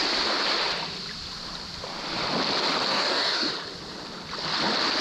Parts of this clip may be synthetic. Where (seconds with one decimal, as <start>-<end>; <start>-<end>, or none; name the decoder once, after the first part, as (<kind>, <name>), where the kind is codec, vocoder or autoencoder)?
2.9-3.5 (codec, DAC)